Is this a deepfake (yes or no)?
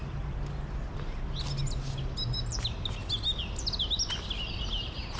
no